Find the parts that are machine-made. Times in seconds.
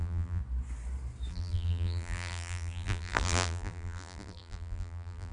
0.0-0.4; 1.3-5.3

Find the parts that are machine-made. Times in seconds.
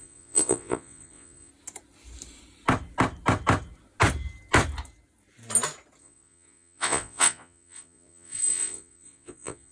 0.0-1.5; 6.0-9.7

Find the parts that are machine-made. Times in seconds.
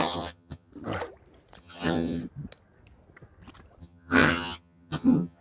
0.0-0.7; 1.6-2.2; 3.8-5.4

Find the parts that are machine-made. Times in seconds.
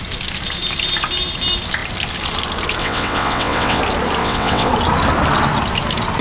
2.8-3.8; 4.2-4.7